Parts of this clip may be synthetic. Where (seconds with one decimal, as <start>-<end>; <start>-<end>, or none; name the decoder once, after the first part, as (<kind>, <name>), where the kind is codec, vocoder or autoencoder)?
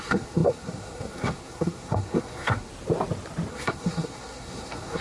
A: 0.0-2.7 (codec, SNAC); 3.5-5.0